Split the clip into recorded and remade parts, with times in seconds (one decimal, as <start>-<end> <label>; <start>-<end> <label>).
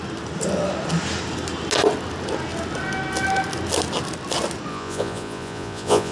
0.0-4.7 recorded; 4.7-6.1 remade